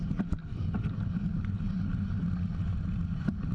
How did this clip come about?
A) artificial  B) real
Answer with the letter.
B